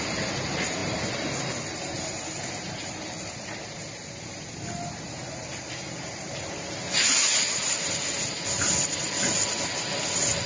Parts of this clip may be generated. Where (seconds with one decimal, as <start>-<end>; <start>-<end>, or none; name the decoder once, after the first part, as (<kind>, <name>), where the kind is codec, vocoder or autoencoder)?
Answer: none